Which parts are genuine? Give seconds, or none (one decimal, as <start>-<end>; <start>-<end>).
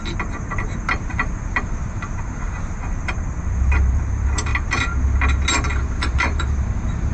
4.5-5.8